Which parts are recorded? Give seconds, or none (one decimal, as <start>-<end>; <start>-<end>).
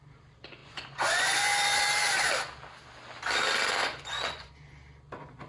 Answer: 0.0-0.6; 1.8-3.8; 4.5-5.5